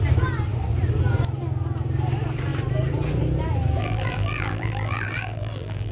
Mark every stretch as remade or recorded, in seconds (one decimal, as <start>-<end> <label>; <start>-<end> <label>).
0.0-3.8 recorded; 3.8-5.9 remade